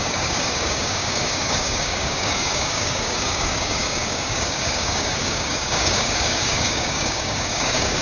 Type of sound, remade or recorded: remade